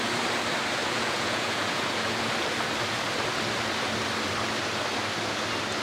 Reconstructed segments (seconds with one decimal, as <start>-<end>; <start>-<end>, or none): 0.8-2.3